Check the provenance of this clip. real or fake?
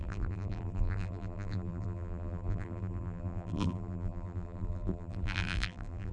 fake